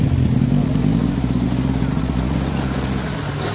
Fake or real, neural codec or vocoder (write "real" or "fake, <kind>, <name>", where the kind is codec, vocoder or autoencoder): real